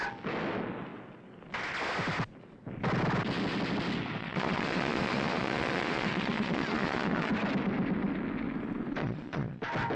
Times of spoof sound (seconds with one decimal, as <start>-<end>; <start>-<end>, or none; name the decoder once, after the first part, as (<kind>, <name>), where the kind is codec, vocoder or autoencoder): 4.2-7.3 (vocoder, Vocos); 9.0-9.6